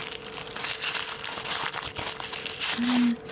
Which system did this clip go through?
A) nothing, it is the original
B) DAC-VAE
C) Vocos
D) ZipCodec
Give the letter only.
A